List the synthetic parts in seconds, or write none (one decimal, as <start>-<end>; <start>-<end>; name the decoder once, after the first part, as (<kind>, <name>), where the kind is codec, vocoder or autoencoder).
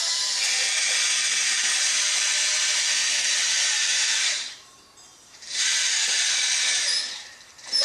1.1-1.8 (vocoder, BigVGAN v2); 3.0-7.8